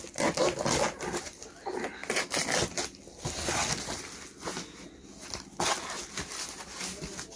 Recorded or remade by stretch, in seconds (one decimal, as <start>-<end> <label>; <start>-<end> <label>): 0.0-7.4 recorded